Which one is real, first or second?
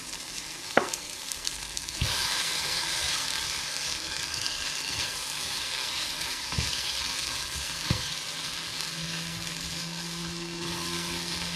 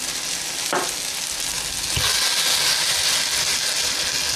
second